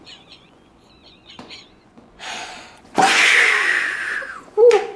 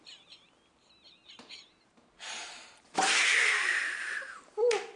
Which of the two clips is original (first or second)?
second